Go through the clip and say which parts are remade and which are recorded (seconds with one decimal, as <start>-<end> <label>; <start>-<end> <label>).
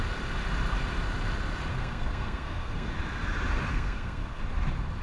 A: 0.0-1.7 recorded; 1.7-2.9 remade; 2.9-3.7 recorded; 3.7-4.4 remade; 4.4-5.0 recorded